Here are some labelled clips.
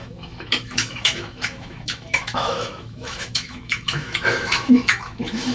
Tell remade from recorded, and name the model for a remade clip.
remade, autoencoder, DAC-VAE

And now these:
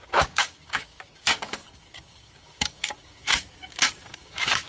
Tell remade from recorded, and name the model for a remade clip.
remade, codec, DAC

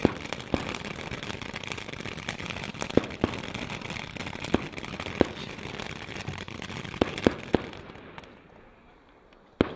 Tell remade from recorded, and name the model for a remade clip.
recorded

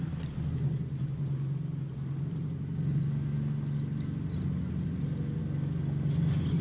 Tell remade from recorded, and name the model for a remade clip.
recorded